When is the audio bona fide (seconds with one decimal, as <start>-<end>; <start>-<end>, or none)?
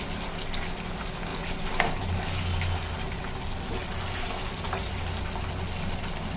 0.0-6.4